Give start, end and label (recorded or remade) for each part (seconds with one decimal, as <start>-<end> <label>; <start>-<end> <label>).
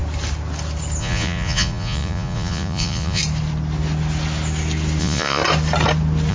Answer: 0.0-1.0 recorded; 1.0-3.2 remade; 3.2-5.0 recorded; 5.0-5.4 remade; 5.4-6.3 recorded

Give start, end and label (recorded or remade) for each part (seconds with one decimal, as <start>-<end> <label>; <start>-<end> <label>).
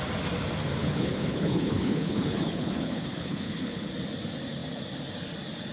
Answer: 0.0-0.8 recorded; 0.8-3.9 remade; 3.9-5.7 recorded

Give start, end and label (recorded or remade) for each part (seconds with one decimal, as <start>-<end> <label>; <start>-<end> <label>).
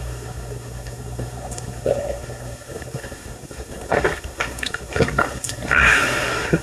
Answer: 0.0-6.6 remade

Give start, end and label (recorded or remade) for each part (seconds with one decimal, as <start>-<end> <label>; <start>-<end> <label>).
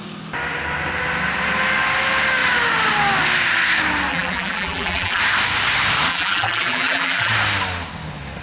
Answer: 0.0-4.1 recorded; 4.1-5.2 remade; 5.2-6.1 recorded; 6.1-7.3 remade; 7.3-8.4 recorded